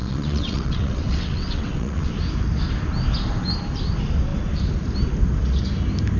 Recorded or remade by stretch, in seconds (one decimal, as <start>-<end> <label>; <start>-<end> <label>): 0.0-2.1 remade; 2.1-6.2 recorded